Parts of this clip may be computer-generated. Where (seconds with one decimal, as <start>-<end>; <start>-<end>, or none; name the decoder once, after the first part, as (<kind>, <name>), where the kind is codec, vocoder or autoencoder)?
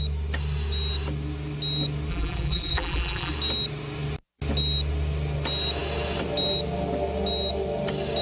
2.1-3.3 (vocoder, BigVGAN v2)